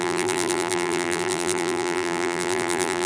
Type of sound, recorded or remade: remade